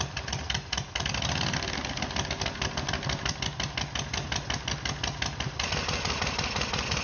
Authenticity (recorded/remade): recorded